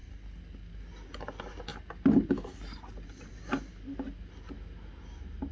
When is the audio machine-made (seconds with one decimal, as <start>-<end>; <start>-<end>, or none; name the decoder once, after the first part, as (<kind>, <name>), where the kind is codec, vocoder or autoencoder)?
none